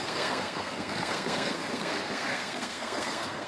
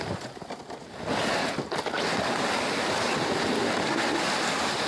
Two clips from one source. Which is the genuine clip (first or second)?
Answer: second